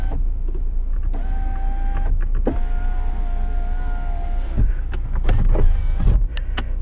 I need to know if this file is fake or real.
real